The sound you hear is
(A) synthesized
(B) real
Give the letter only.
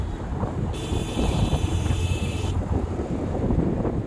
A